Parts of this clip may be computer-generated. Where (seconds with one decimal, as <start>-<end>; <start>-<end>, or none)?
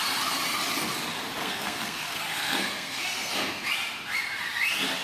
1.4-3.7